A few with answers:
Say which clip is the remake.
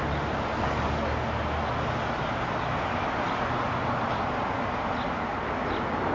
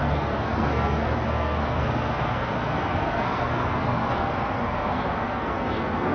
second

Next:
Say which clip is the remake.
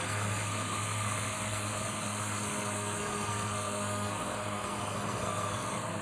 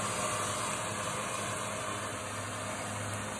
first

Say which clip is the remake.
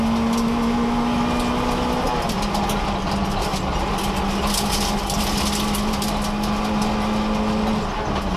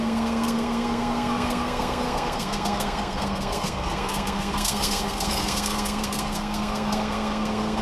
second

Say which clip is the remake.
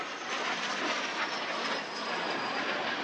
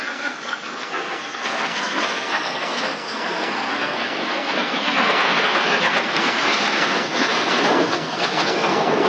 second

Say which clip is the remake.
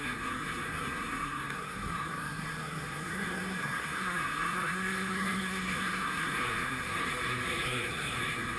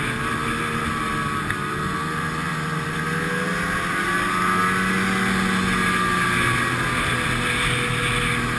first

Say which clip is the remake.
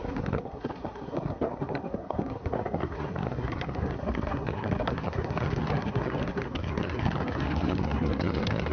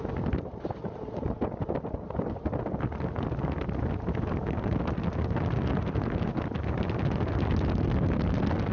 first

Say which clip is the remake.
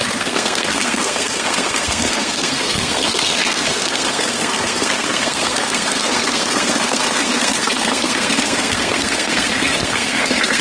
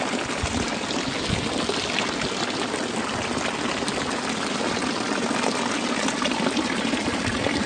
first